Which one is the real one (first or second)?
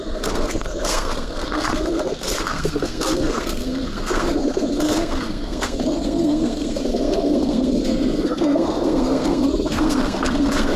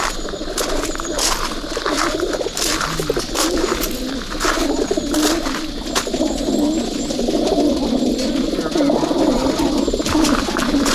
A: second